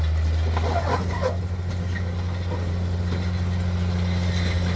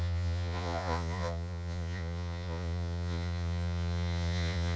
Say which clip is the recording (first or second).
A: first